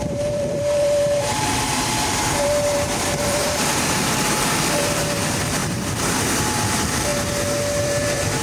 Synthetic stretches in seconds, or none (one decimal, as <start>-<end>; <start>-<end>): 0.0-7.1; 7.8-8.4